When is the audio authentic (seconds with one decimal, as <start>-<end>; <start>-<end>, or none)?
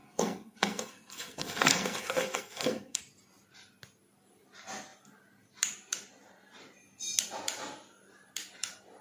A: 3.0-9.0